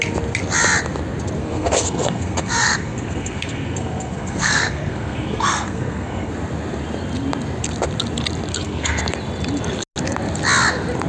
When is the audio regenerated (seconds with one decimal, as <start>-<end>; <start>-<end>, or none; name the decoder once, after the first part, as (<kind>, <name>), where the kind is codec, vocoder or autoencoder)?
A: 1.4-6.3 (codec, SNAC); 8.5-9.0